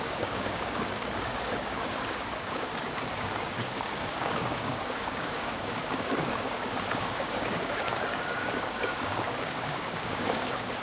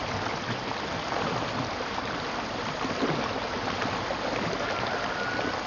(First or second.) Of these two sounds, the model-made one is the first